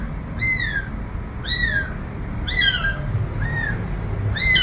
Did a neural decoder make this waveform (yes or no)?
no